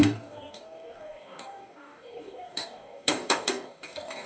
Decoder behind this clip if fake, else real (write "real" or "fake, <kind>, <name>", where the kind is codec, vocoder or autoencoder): fake, codec, DAC